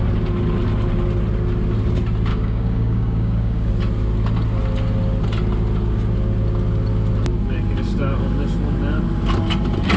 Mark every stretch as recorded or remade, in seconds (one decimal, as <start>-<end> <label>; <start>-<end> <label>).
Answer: 0.0-2.3 recorded; 2.3-3.7 remade; 3.7-10.0 recorded